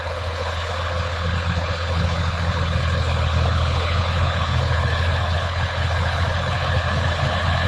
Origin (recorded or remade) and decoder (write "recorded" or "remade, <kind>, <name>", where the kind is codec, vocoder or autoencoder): remade, codec, HILCodec